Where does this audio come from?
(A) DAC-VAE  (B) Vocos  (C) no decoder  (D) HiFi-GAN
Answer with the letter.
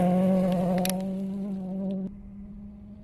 C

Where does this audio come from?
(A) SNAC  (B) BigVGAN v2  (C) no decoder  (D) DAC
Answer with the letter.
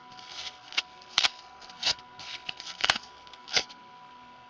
A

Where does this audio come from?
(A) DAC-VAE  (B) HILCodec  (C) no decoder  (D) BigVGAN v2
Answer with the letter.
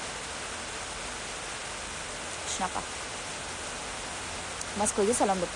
C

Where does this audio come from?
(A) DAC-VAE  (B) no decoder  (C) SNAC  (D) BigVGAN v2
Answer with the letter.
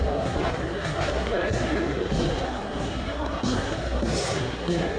C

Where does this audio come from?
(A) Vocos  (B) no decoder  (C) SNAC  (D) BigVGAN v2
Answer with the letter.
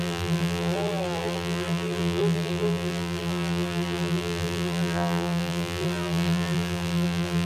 D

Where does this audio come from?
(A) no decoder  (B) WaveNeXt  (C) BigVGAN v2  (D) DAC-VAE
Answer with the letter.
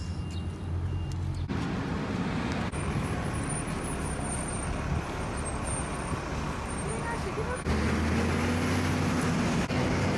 A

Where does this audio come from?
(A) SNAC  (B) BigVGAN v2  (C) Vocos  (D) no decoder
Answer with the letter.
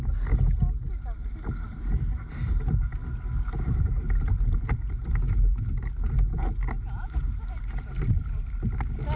D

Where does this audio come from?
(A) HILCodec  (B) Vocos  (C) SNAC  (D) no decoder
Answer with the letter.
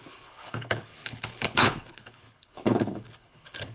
A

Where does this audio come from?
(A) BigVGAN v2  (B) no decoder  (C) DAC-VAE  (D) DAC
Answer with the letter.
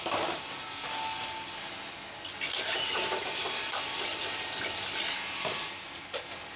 B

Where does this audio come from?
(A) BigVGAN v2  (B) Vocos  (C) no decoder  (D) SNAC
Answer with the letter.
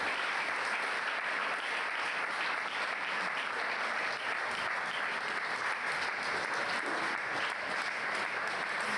C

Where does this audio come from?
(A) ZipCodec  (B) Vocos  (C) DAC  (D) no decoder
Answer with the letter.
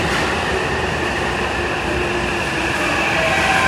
D